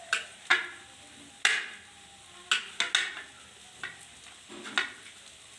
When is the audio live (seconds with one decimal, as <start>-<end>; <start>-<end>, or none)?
0.0-5.6